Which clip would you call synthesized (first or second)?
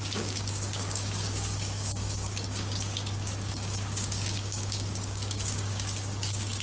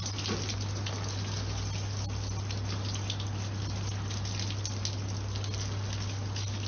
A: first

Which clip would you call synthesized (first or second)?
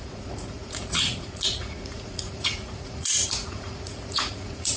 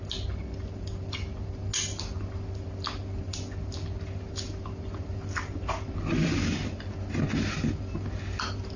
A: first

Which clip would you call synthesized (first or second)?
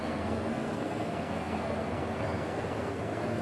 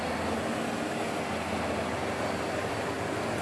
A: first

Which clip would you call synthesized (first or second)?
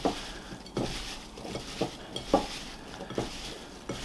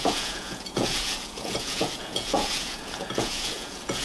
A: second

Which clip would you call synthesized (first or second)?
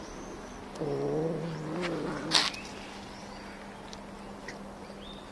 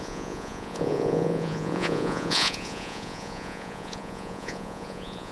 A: second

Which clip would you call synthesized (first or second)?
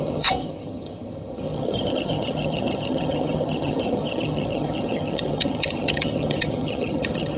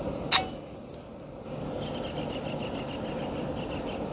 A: first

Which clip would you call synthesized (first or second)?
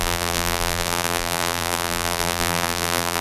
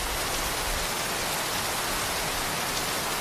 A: first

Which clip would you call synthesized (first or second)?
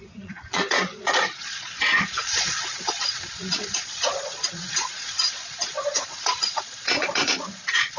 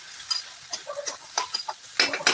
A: first